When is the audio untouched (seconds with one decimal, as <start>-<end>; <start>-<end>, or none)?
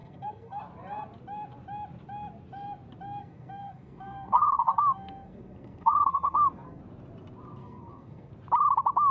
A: 0.6-3.2; 6.8-7.6; 8.3-9.1